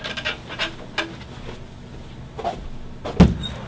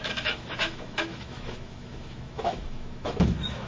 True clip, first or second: first